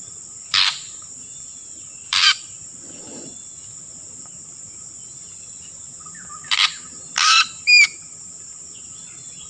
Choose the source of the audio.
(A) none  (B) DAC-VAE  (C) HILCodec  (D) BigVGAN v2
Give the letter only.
D